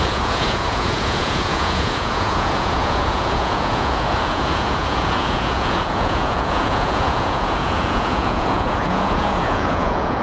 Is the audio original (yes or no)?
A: no